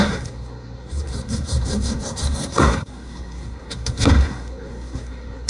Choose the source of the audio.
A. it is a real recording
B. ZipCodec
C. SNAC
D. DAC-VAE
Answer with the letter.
C